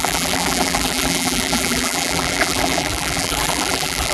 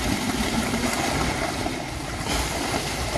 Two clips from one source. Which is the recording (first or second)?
second